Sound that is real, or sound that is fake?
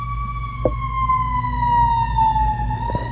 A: real